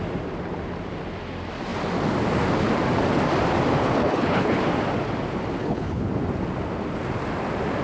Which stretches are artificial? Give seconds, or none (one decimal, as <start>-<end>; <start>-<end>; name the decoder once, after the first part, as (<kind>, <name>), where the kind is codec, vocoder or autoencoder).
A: 4.0-4.6 (codec, HILCodec); 5.6-6.1